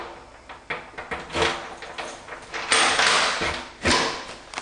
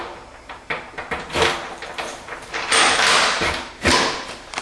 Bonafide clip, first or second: first